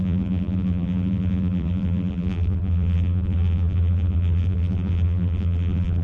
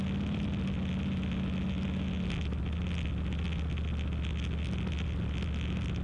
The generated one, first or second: first